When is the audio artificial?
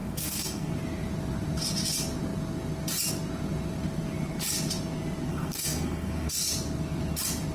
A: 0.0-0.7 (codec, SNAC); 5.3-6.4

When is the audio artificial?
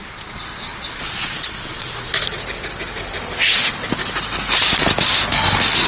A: 0.0-2.2 (vocoder, Vocos)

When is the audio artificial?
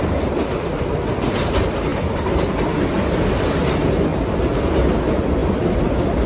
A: 0.0-4.1 (vocoder, BigVGAN v2); 4.9-6.3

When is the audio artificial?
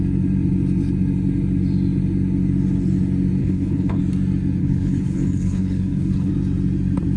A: 3.4-4.0 (codec, HILCodec); 4.6-6.3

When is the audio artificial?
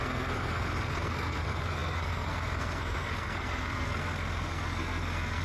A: 0.0-5.4 (codec, SNAC)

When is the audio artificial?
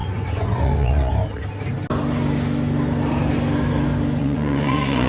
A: 0.0-1.1 (vocoder, Vocos); 4.2-5.1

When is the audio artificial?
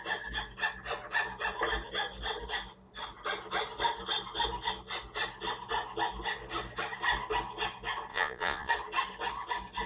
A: 8.1-8.7 (vocoder, Vocos)